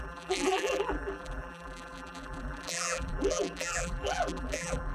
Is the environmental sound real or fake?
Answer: fake